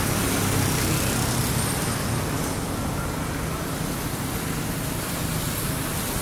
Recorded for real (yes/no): yes